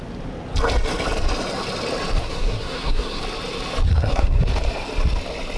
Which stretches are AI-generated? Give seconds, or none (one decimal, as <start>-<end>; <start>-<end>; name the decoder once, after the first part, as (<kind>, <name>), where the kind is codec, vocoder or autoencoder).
2.2-3.2 (codec, SNAC); 3.9-4.4